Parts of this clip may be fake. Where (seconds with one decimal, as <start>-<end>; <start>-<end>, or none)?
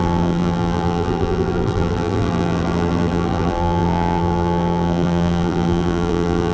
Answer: 0.0-6.5